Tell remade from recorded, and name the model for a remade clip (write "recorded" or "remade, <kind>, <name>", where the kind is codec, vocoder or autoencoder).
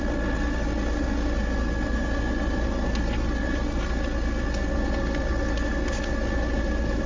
recorded